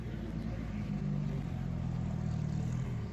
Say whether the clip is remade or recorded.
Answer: recorded